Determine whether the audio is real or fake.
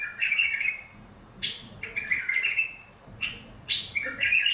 fake